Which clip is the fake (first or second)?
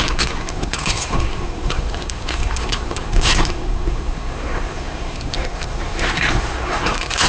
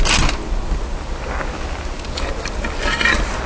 first